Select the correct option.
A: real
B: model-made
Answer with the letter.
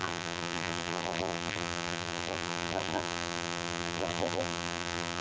B